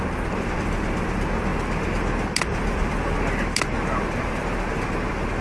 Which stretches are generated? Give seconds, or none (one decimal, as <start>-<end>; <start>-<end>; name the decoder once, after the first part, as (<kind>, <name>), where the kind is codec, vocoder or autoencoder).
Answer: none